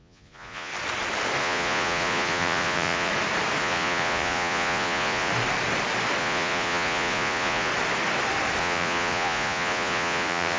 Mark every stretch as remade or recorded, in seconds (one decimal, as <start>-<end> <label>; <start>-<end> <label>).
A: 0.0-0.7 remade; 0.7-1.4 recorded; 1.4-3.1 remade; 3.1-3.6 recorded; 3.6-5.3 remade; 5.3-6.2 recorded; 6.2-7.7 remade; 7.7-8.6 recorded; 8.6-10.6 remade